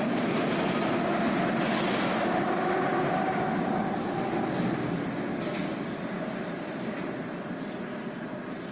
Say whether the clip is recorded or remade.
recorded